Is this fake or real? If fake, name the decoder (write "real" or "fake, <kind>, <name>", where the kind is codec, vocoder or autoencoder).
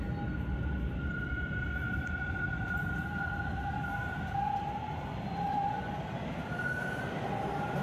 real